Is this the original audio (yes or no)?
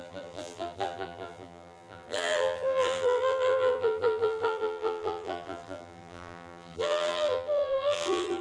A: no